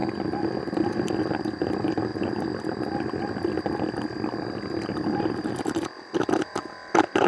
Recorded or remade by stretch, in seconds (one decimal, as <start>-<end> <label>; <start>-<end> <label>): 0.0-7.3 recorded